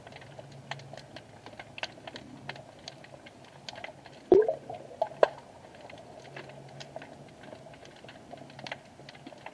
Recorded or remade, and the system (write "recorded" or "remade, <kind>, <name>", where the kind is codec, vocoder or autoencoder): recorded